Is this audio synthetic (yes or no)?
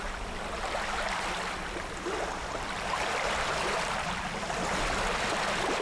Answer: no